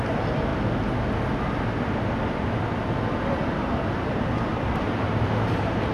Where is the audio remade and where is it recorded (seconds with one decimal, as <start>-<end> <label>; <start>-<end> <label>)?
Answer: 0.0-0.5 remade; 0.5-4.0 recorded; 4.0-4.5 remade; 4.5-5.1 recorded; 5.1-5.9 remade